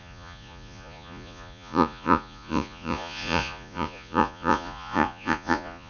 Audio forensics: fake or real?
fake